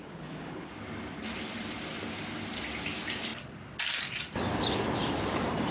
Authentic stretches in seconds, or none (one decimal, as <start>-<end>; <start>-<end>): 0.7-5.7